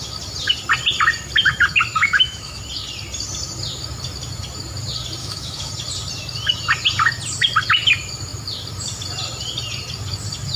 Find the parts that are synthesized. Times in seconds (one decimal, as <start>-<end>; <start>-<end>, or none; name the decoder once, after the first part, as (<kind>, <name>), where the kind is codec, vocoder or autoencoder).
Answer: 2.0-2.6 (autoencoder, DAC-VAE); 5.2-5.7